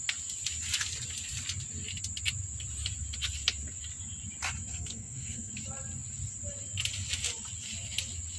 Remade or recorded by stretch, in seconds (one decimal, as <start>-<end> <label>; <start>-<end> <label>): 0.0-4.7 recorded; 4.7-5.5 remade; 5.5-8.4 recorded